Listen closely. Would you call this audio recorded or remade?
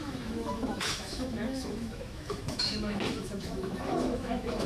remade